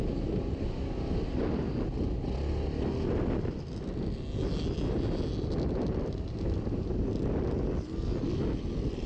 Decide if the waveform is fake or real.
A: real